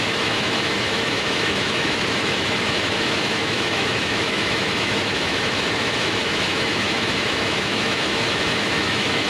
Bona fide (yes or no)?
no